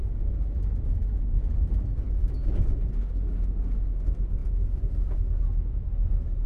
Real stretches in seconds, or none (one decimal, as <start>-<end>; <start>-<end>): 0.9-4.4; 5.1-6.5